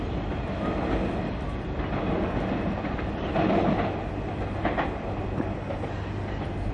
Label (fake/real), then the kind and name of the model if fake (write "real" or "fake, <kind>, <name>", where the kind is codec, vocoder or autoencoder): real